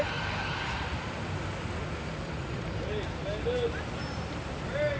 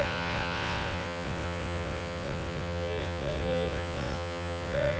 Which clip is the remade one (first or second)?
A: second